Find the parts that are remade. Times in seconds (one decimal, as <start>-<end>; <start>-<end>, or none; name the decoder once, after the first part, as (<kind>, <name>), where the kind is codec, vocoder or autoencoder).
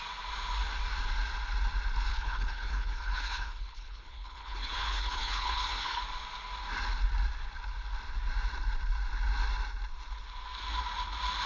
2.1-6.0 (codec, HILCodec)